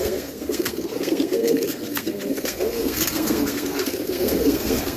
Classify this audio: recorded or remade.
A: remade